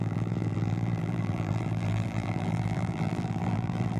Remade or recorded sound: remade